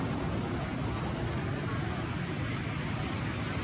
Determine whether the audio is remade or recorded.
recorded